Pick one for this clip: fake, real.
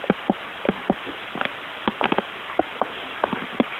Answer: real